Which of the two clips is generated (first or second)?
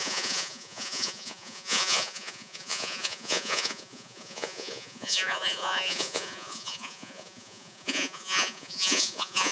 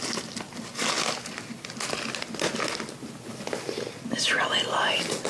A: first